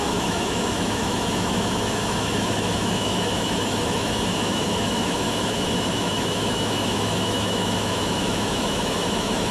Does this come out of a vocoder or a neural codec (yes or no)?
yes